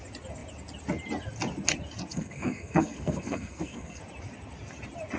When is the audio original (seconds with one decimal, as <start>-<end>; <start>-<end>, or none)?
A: 0.0-2.1; 4.0-5.2